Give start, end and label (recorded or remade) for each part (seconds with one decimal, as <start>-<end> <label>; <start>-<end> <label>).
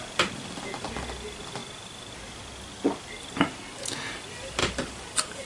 0.0-1.6 recorded; 1.6-2.1 remade; 2.1-4.6 recorded; 4.6-5.5 remade